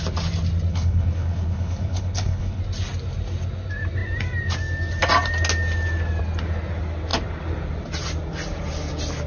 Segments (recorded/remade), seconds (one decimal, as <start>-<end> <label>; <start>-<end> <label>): 0.0-0.7 recorded; 0.7-2.6 remade; 2.6-9.3 recorded